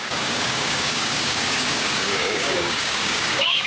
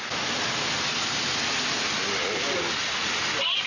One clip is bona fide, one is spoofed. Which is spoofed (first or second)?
first